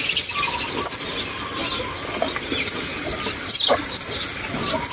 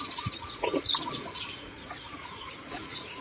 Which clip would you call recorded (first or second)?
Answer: first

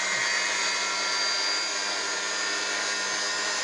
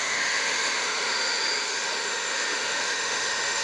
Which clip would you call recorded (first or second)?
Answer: first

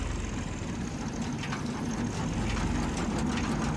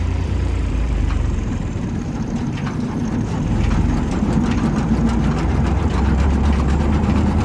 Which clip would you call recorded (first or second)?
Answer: first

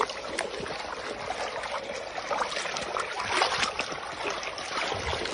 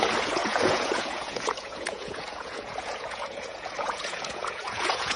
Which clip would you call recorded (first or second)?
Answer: first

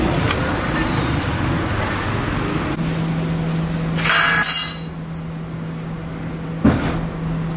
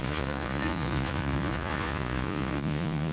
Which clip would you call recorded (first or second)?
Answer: first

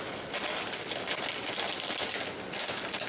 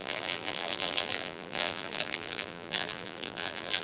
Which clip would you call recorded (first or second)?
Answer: first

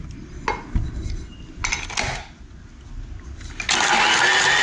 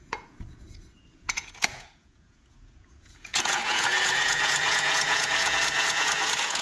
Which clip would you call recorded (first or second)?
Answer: first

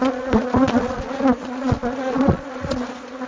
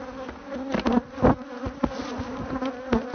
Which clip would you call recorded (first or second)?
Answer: second